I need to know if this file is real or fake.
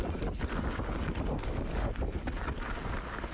real